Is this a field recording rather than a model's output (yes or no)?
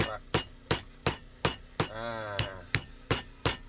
yes